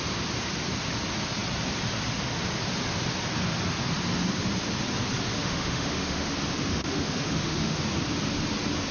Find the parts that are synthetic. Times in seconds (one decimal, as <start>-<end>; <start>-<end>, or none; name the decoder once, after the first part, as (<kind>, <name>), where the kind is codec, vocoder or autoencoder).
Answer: 5.4-6.3 (autoencoder, DAC-VAE); 6.7-7.8